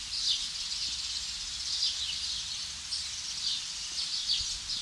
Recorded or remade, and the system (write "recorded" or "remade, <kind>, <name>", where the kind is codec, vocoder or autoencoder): recorded